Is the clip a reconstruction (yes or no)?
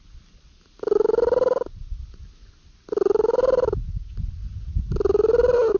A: no